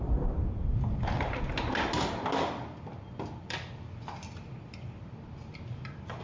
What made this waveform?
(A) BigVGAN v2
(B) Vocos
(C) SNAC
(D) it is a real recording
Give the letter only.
A